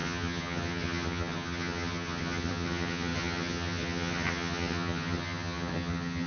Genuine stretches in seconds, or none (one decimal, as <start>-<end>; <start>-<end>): none